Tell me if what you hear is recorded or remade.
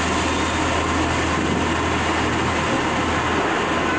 recorded